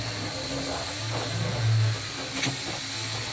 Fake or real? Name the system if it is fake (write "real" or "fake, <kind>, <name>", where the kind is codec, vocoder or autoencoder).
real